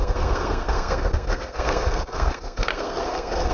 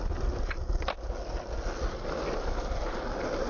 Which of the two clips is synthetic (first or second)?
first